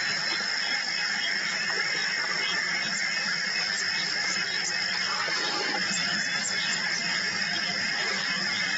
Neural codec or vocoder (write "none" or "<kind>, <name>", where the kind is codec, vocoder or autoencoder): none